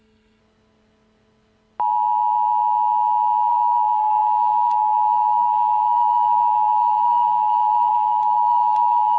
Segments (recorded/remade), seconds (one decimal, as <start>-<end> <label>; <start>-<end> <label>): 0.0-0.4 remade; 0.4-3.5 recorded; 3.5-9.2 remade